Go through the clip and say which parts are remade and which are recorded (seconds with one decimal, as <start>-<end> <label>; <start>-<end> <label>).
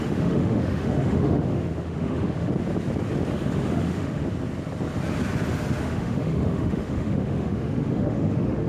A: 0.0-2.5 remade; 2.5-3.3 recorded; 3.3-4.2 remade; 4.2-5.8 recorded; 5.8-8.7 remade